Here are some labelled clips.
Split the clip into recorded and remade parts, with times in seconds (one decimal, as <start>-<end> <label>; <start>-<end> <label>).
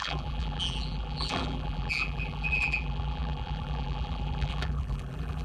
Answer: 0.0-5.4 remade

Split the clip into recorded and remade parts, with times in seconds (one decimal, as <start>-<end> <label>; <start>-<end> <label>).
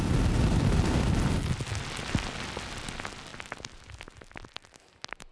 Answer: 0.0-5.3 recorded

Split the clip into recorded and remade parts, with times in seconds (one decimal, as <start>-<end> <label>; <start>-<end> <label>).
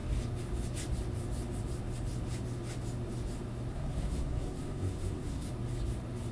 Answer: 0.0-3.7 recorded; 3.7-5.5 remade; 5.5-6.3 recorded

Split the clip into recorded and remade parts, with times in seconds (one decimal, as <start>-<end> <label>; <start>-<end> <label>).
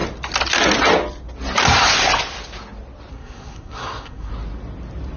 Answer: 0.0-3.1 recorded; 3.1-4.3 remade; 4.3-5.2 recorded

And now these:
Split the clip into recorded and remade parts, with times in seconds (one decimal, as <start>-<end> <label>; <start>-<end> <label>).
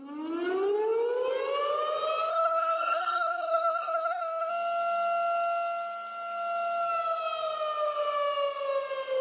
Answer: 0.0-2.3 recorded; 2.3-4.5 remade; 4.5-9.2 recorded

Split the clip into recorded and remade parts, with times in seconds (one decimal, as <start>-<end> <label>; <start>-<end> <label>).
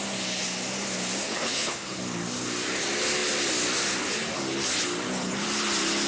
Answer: 0.0-1.3 recorded; 1.3-2.0 remade; 2.0-6.1 recorded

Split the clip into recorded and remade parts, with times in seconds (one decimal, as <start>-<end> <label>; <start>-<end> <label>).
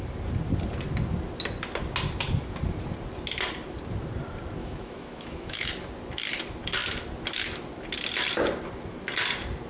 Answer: 0.0-4.6 recorded; 4.6-5.7 remade; 5.7-9.7 recorded